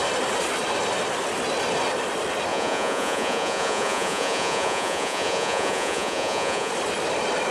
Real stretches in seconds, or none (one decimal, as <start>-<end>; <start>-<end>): 0.0-2.5; 6.7-7.5